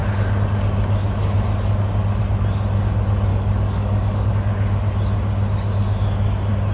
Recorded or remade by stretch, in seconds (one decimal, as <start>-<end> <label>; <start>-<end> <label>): 0.0-3.3 recorded; 3.3-4.3 remade; 4.3-6.7 recorded